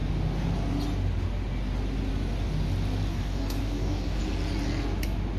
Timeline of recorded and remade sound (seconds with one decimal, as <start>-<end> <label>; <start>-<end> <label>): 0.0-3.1 recorded; 3.1-4.2 remade; 4.2-5.4 recorded

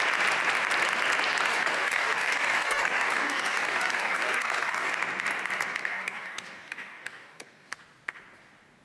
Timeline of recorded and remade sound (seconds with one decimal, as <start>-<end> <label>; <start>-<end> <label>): 0.0-1.5 recorded; 1.5-4.9 remade; 4.9-5.8 recorded; 5.8-7.7 remade; 7.7-8.8 recorded

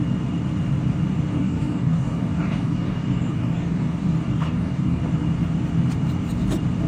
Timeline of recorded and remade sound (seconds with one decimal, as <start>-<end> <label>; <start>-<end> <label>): 0.0-1.3 recorded; 1.3-5.0 remade; 5.0-6.9 recorded

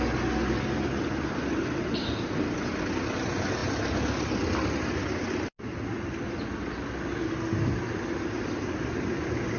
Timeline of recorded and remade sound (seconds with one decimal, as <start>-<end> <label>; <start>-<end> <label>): 0.0-9.6 recorded